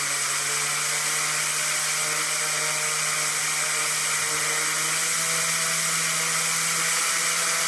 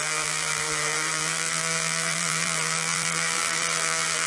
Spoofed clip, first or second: second